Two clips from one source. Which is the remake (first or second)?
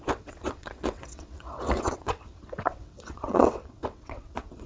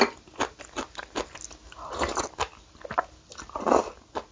first